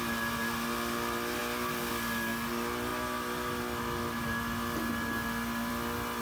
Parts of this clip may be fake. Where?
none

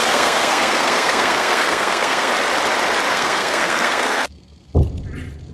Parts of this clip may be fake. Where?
0.0-2.3 (codec, SNAC); 3.1-4.7

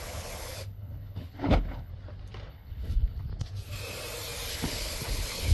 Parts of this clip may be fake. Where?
0.0-1.9 (codec, HILCodec); 2.5-3.3; 4.5-5.5

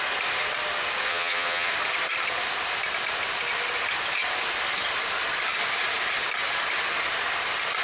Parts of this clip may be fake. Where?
1.1-1.7 (vocoder, HiFi-GAN)

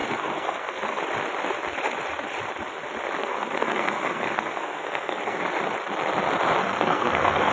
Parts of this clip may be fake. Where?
0.0-1.0 (codec, SNAC); 3.2-5.4; 6.6-7.5

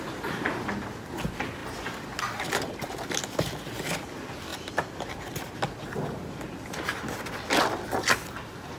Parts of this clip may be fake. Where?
none